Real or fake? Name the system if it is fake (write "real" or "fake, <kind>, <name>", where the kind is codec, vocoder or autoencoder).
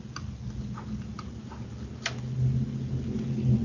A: real